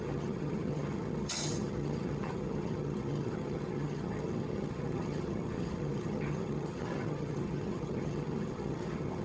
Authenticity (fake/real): fake